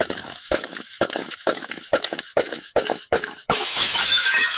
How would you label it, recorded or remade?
remade